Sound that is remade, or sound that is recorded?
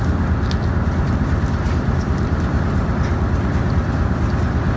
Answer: recorded